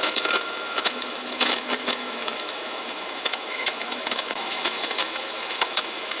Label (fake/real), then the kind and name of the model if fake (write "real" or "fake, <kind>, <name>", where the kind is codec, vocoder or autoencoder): fake, autoencoder, DAC-VAE